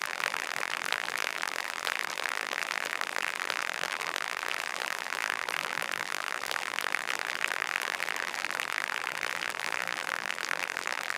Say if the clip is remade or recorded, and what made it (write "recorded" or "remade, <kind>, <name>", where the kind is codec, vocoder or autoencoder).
remade, vocoder, BigVGAN v2